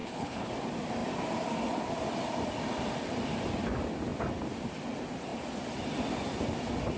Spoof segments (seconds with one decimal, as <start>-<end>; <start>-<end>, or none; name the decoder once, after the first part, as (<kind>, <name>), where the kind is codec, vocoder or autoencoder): 0.0-0.5 (codec, HILCodec)